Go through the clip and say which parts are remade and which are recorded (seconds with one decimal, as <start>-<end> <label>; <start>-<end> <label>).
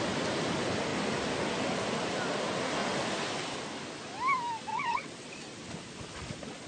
0.0-4.7 recorded; 4.7-5.3 remade; 5.3-6.7 recorded